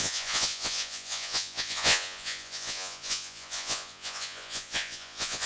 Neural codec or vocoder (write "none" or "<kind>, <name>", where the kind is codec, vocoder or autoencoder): vocoder, Vocos